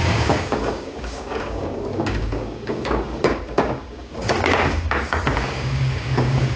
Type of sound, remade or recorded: remade